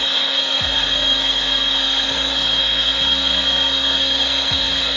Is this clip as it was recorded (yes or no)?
no